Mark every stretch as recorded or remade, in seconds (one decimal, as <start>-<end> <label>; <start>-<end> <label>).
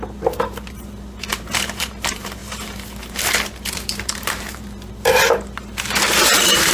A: 0.0-6.7 remade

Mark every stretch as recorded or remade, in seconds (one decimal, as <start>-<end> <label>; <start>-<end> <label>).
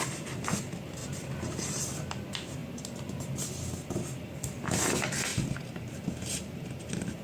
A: 0.0-1.0 recorded; 1.0-1.8 remade; 1.8-5.3 recorded; 5.3-7.2 remade